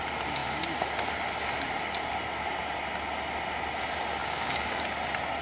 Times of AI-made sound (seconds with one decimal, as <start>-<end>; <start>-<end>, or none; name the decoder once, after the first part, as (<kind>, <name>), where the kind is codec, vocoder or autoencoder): 4.2-4.8 (codec, DAC)

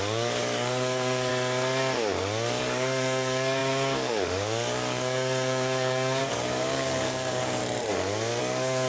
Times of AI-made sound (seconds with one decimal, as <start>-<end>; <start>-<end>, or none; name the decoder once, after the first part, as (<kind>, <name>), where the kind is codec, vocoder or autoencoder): 0.0-1.3 (codec, DAC); 2.6-7.6; 8.4-8.9

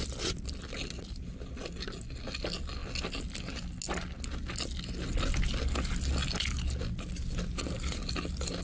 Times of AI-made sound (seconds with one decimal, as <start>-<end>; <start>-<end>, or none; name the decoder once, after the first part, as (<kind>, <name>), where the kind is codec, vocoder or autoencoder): none